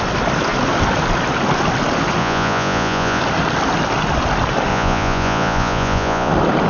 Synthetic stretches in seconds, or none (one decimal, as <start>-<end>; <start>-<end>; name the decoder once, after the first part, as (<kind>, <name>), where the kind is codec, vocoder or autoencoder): 2.2-3.2 (vocoder, Vocos); 4.7-6.3